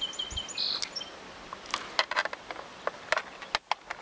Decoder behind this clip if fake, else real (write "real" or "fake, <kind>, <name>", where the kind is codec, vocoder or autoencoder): real